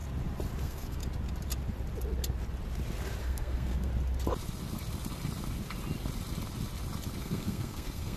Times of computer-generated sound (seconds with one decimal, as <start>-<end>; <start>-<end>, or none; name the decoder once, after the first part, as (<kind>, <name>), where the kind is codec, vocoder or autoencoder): 0.6-1.0 (codec, SNAC); 3.2-3.9; 7.2-8.2